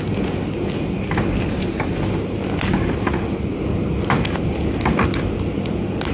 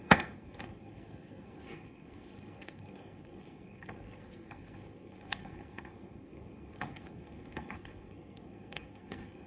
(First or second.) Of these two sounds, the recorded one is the first